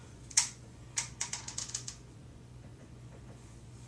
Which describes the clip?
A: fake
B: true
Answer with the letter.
A